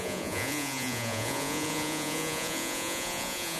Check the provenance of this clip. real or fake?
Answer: fake